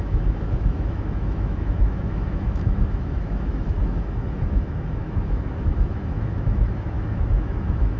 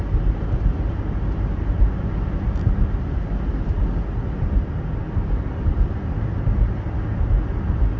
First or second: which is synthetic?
first